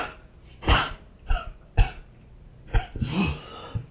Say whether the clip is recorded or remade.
recorded